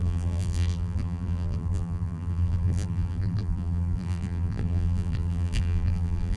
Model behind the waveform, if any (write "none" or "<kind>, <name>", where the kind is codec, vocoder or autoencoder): vocoder, BigVGAN v2